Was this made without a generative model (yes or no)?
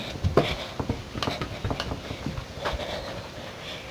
yes